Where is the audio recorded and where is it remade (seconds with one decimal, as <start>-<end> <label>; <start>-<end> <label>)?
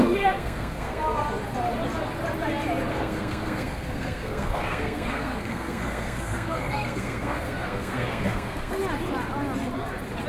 0.0-1.2 remade; 1.2-2.9 recorded; 2.9-8.8 remade; 8.8-10.3 recorded